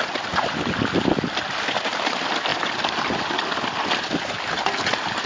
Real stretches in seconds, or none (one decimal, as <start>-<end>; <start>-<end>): 0.0-5.3